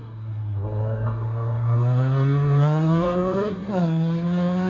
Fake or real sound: fake